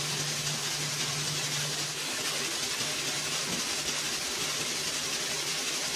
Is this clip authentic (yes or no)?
yes